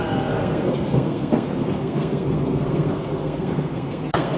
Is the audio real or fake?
fake